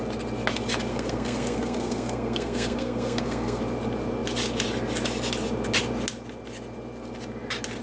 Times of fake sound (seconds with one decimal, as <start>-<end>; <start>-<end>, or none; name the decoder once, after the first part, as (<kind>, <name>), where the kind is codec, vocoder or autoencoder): 0.9-3.6 (codec, SNAC)